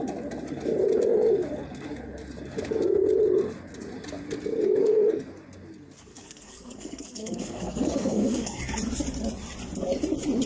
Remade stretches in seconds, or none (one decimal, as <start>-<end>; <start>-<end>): 4.6-5.3; 6.1-8.6